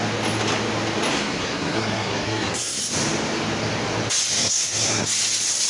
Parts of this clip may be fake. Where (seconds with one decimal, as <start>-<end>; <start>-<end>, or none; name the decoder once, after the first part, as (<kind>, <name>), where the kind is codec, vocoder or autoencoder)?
1.1-2.8 (codec, SNAC); 4.4-5.1